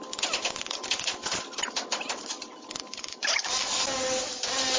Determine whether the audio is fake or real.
real